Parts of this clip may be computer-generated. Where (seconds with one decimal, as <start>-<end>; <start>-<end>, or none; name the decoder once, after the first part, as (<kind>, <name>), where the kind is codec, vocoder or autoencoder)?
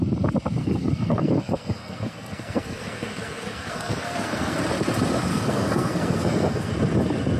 0.6-4.6 (codec, SNAC); 5.3-6.7